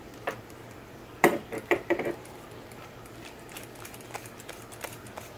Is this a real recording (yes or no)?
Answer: no